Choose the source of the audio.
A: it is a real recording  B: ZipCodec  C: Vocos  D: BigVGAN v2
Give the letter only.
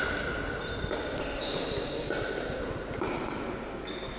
A